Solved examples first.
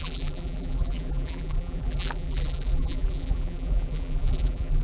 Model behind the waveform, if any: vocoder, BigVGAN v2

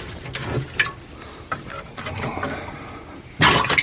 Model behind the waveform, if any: none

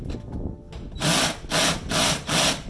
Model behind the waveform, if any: none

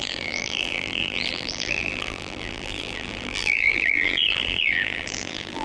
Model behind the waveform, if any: vocoder, BigVGAN v2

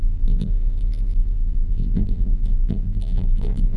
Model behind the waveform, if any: vocoder, BigVGAN v2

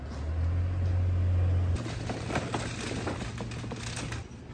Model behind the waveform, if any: none